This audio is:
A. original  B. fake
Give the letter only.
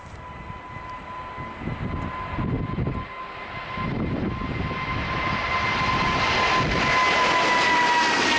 A